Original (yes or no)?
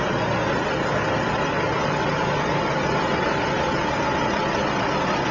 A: yes